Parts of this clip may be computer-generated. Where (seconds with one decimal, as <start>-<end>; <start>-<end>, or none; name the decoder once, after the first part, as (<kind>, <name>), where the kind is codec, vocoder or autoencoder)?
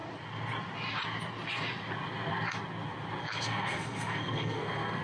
3.2-5.0 (codec, SNAC)